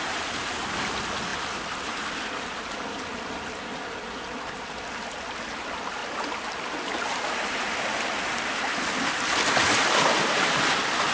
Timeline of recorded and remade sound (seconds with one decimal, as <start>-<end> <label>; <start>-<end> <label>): 0.0-11.1 recorded